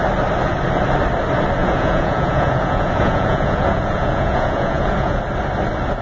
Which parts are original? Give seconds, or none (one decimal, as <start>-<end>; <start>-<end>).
0.0-1.6; 5.2-6.0